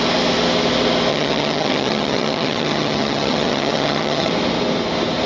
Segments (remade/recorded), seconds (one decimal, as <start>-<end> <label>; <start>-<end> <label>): 0.0-1.1 recorded; 1.1-4.3 remade; 4.3-5.3 recorded